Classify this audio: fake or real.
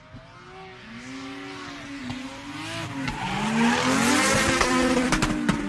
real